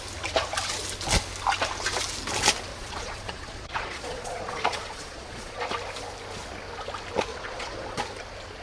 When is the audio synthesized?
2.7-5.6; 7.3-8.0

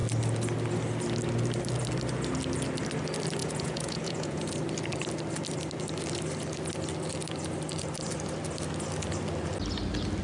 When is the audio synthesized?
3.4-4.5

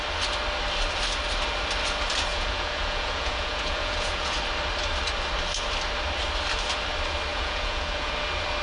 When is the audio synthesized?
2.3-4.4; 7.3-8.1

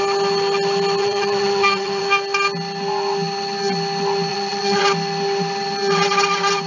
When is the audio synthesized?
1.0-2.0; 4.3-4.8

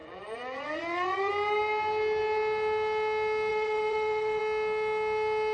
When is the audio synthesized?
0.0-1.3; 3.5-4.4

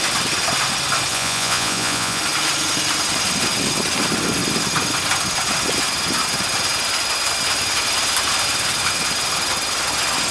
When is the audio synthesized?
1.1-2.2